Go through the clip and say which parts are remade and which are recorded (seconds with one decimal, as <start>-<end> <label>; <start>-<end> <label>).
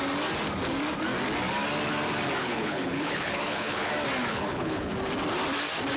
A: 0.0-2.4 recorded; 2.4-3.9 remade; 3.9-4.3 recorded; 4.3-4.9 remade; 4.9-6.0 recorded